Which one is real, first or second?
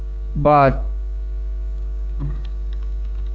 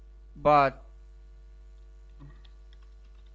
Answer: second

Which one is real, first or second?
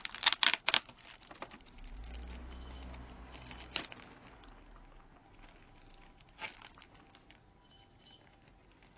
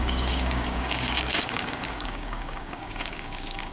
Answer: first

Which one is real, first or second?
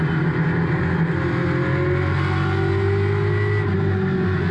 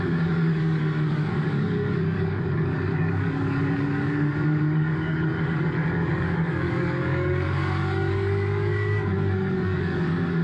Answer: first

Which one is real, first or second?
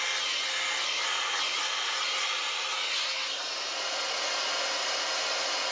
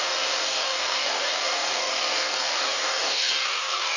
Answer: first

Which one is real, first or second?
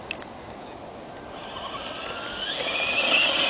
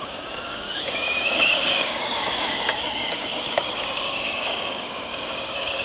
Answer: first